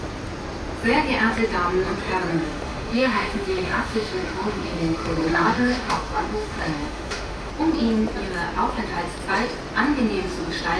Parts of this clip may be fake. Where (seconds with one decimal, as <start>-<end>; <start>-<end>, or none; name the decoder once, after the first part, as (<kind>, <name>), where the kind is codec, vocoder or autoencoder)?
2.3-7.5 (autoencoder, DAC-VAE)